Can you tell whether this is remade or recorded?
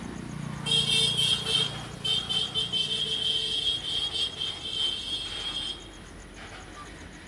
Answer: recorded